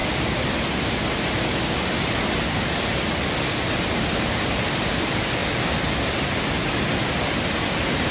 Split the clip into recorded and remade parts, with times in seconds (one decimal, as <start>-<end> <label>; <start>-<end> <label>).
0.0-4.9 recorded; 4.9-5.4 remade; 5.4-7.1 recorded; 7.1-8.1 remade